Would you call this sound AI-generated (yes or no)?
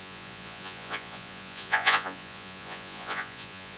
yes